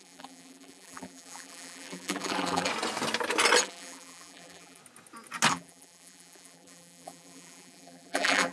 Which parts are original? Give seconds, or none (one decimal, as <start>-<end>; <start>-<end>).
2.7-3.6; 4.8-5.5